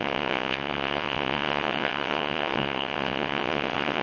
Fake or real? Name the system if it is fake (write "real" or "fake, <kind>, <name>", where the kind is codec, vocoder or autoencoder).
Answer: fake, vocoder, WaveNeXt